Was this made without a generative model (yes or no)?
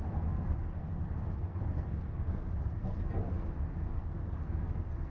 no